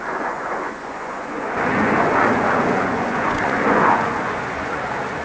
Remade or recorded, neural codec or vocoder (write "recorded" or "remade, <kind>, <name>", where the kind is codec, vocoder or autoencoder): remade, vocoder, Vocos